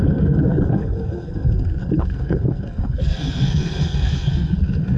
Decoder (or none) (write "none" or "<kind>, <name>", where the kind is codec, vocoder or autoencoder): codec, SNAC